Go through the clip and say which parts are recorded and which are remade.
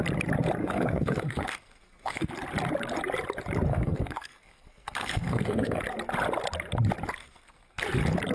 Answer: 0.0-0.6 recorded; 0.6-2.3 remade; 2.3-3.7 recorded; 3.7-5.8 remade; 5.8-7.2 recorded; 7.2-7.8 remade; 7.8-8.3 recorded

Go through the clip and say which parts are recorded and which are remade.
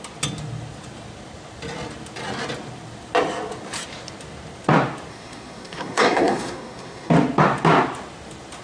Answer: 0.0-5.1 recorded; 5.1-7.1 remade; 7.1-8.6 recorded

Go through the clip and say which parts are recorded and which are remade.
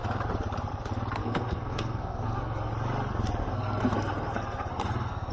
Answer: 0.0-1.2 recorded; 1.2-2.7 remade; 2.7-3.4 recorded; 3.4-5.3 remade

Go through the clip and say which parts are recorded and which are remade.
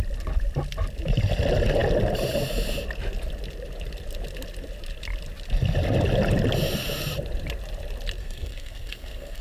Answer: 0.0-8.2 recorded; 8.2-9.4 remade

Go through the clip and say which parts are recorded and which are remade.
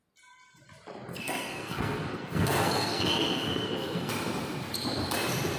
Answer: 0.0-1.1 recorded; 1.1-4.1 remade; 4.1-5.6 recorded